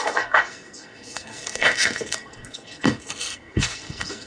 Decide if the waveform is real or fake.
fake